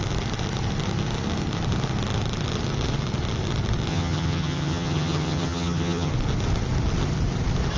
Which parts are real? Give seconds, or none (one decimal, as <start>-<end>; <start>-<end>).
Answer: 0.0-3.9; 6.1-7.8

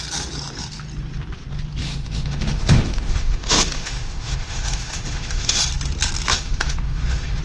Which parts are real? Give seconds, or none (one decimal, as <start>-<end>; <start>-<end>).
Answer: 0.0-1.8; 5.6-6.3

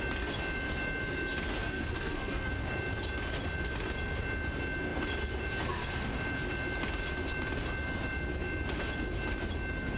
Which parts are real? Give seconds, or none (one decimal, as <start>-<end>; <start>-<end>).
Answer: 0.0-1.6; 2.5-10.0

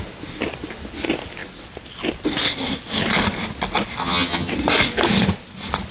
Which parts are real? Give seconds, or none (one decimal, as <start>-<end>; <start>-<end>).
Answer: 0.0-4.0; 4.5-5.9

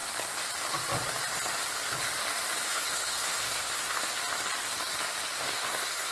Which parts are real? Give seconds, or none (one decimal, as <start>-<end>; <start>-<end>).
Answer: 0.0-2.7; 4.0-5.3